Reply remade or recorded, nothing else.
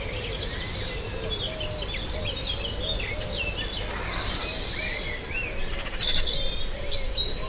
recorded